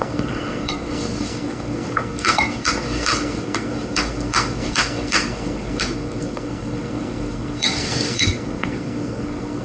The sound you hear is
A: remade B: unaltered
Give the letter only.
A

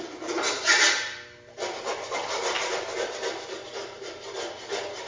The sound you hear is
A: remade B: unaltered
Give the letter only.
B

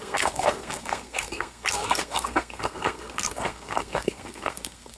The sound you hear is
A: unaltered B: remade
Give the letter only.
B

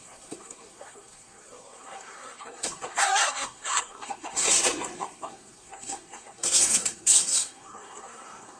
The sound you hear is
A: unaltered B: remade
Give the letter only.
B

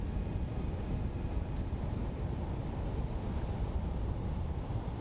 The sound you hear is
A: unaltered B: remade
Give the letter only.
A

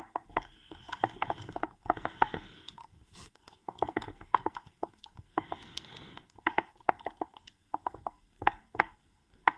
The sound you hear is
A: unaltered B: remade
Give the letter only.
B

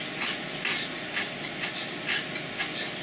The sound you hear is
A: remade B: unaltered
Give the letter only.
B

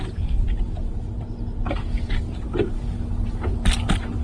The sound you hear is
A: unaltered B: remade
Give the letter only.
A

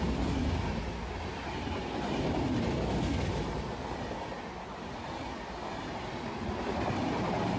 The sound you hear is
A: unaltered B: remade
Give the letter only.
A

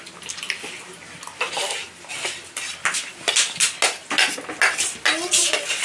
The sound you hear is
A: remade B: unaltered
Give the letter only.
B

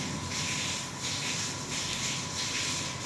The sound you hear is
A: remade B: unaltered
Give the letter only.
B